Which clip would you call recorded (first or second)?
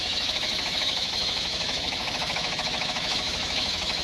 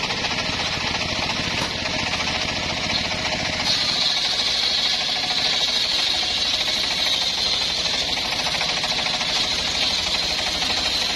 second